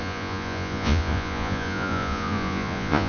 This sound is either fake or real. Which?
fake